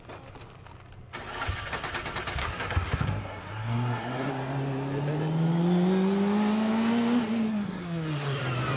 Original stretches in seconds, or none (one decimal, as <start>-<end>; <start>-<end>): 0.0-2.4; 4.3-7.5; 8.4-8.8